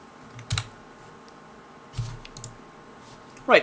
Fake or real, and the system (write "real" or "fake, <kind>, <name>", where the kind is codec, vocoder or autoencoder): real